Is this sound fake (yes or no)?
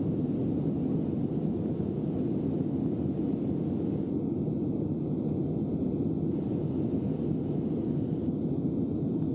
no